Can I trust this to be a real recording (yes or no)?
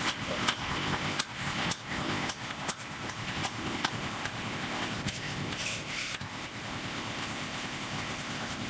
no